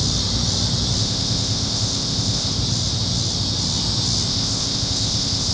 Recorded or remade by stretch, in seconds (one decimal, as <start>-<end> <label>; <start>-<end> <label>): 0.0-1.0 recorded; 1.0-2.6 remade; 2.6-4.3 recorded; 4.3-5.5 remade